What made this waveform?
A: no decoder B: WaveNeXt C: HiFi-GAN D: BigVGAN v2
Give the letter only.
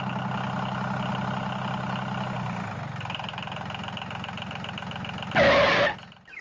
A